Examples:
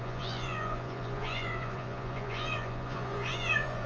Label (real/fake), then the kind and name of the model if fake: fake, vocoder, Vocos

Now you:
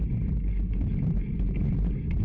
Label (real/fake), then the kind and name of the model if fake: real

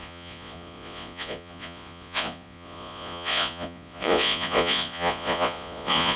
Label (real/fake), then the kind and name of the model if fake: fake, vocoder, Vocos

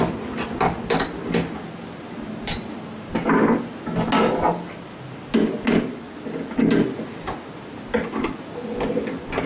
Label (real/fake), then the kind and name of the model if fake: real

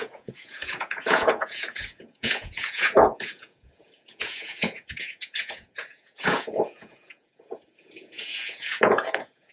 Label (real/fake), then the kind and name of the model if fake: fake, vocoder, Vocos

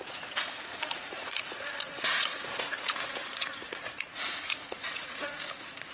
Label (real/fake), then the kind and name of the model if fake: fake, vocoder, Vocos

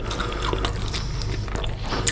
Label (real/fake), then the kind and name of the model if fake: real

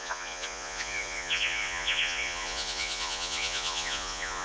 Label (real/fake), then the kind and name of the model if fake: fake, vocoder, Vocos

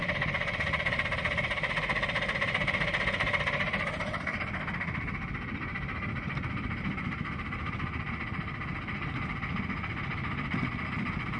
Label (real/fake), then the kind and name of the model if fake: real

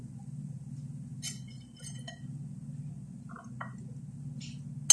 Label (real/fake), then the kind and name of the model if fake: real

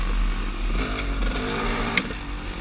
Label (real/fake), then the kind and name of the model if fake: real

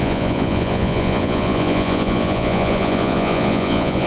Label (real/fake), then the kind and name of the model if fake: fake, vocoder, Vocos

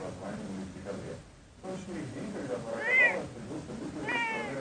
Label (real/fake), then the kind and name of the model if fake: real